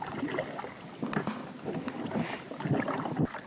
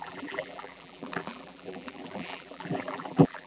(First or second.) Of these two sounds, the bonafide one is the first